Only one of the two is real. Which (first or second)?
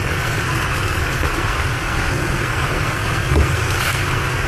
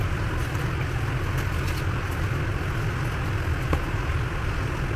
second